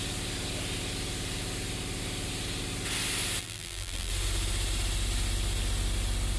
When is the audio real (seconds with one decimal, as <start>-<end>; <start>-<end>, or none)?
0.0-3.4; 4.1-6.4